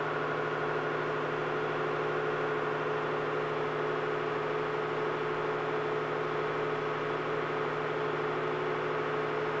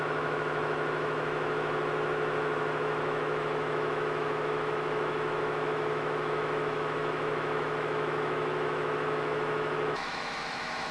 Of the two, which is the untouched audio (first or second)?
first